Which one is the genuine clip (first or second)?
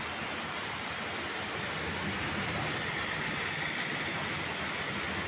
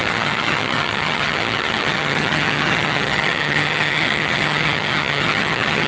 first